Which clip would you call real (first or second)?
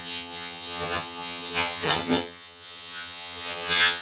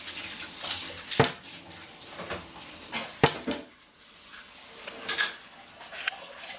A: second